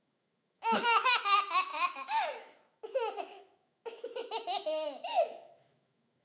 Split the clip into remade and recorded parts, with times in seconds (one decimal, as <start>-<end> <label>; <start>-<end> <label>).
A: 0.0-6.2 remade